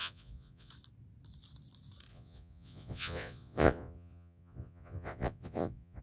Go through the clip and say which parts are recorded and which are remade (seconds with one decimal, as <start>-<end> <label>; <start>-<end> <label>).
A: 0.0-0.7 remade; 0.7-2.1 recorded; 2.1-6.0 remade